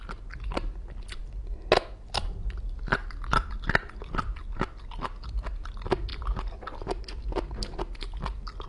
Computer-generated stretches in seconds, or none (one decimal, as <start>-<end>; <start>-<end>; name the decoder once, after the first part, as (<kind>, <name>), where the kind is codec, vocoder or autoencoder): none